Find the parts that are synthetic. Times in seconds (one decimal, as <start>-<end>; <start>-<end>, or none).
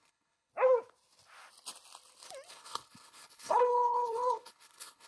0.0-0.5; 2.5-5.1